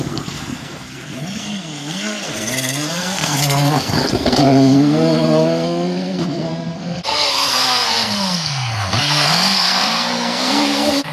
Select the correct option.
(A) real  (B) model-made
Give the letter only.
B